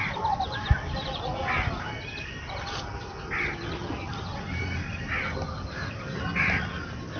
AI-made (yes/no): no